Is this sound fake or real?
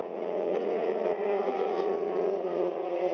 fake